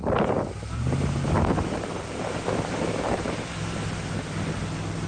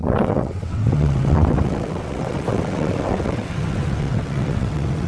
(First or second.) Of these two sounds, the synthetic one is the second